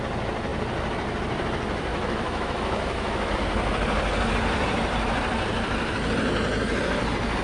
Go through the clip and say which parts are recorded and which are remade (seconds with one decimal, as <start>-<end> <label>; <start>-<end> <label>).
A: 0.0-1.9 recorded; 1.9-3.3 remade; 3.3-7.4 recorded